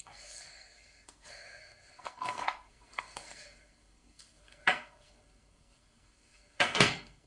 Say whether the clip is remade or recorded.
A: remade